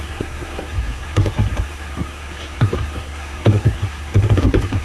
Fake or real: fake